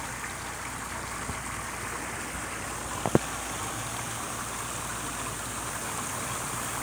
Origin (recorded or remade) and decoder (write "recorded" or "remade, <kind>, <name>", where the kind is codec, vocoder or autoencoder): recorded